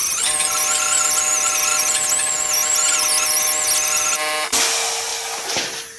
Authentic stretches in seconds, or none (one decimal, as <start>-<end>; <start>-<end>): 0.0-5.1